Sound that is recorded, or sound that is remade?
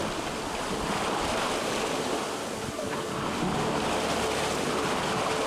recorded